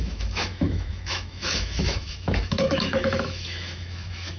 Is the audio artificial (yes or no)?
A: yes